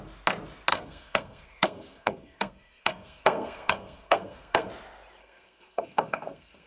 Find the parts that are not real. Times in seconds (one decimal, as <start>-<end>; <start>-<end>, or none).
0.7-4.7; 5.2-6.7